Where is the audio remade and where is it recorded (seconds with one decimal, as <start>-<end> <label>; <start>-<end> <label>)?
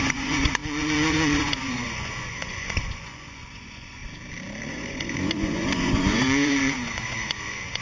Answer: 0.0-4.0 remade; 4.0-4.7 recorded; 4.7-7.8 remade